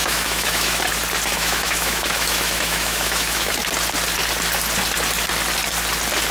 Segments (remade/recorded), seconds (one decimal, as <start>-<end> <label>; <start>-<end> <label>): 0.0-0.8 remade; 0.8-1.3 recorded; 1.3-3.5 remade; 3.5-6.3 recorded